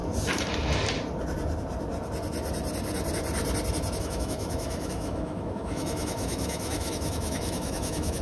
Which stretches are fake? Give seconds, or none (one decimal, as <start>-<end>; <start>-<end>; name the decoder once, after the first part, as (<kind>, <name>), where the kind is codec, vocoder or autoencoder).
4.0-8.2 (autoencoder, DAC-VAE)